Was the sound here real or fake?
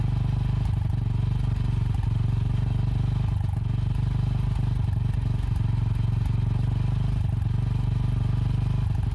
real